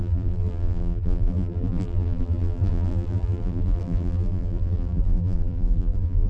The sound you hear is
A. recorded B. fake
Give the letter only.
B